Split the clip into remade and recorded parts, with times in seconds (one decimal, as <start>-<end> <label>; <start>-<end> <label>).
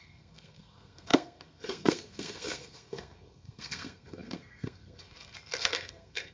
0.0-6.3 remade